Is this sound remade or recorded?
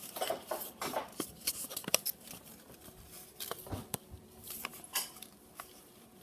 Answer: remade